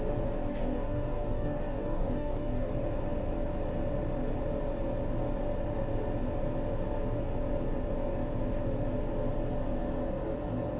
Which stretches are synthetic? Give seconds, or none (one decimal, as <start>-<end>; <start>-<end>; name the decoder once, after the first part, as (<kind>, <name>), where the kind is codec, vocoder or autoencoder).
0.5-2.7 (codec, DAC)